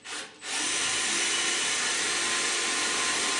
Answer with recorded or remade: recorded